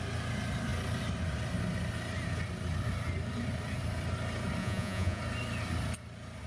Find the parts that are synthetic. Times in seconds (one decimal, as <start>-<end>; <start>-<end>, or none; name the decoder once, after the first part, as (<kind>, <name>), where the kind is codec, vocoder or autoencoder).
4.6-5.2 (vocoder, Vocos)